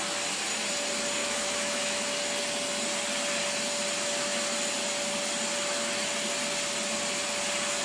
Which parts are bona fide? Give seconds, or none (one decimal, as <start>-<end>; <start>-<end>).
0.0-1.2; 2.1-7.8